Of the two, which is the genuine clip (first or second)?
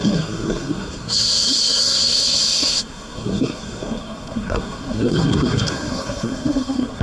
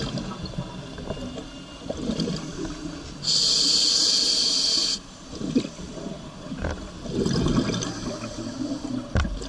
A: second